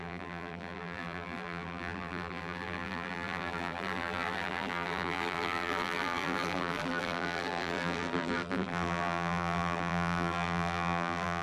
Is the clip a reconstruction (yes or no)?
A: yes